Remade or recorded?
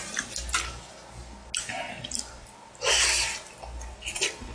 recorded